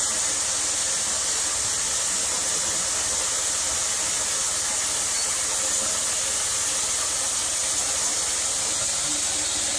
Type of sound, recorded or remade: recorded